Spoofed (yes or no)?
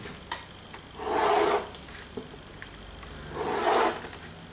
no